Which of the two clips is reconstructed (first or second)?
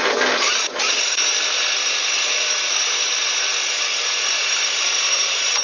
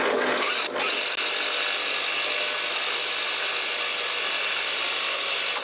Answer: first